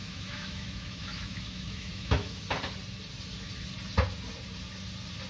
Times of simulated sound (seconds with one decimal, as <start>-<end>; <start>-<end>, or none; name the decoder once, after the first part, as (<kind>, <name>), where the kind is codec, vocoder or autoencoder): 0.0-2.4 (autoencoder, DAC-VAE)